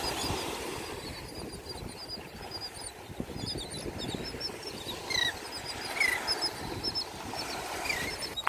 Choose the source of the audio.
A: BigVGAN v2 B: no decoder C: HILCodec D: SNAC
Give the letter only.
B